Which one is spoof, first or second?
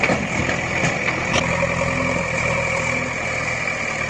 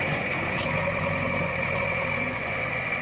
second